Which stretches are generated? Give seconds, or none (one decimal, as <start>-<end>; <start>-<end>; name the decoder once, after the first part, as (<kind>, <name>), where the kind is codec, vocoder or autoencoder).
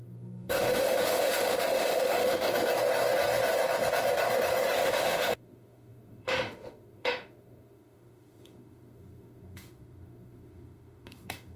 0.0-2.5 (autoencoder, DAC-VAE); 4.8-11.6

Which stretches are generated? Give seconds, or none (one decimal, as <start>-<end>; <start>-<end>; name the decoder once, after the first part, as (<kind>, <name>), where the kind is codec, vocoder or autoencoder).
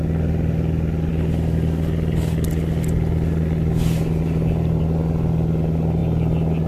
none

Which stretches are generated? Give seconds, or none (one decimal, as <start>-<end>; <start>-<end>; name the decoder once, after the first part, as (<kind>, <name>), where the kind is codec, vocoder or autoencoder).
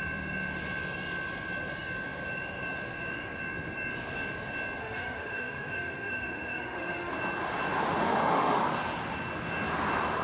4.8-7.1 (autoencoder, DAC-VAE); 8.0-8.6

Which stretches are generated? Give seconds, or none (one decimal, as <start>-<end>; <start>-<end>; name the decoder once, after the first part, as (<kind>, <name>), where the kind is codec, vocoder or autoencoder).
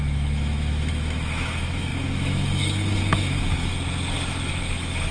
0.0-3.7 (autoencoder, DAC-VAE); 4.5-5.1